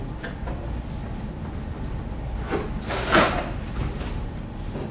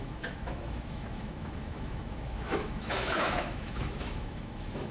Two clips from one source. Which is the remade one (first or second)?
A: second